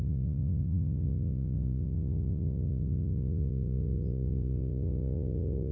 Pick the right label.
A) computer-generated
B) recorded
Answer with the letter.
A